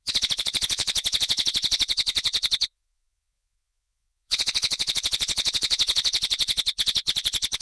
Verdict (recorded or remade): remade